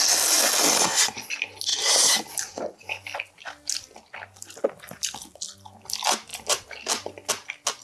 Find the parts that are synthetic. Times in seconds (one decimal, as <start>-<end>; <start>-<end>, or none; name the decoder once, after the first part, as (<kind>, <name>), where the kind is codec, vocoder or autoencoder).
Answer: none